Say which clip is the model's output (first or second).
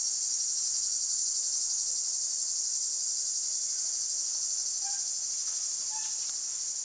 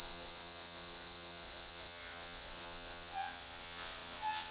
second